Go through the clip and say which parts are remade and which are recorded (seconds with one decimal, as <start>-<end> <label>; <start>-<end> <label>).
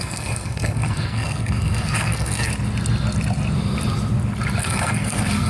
0.0-2.5 remade; 2.5-4.6 recorded; 4.6-5.5 remade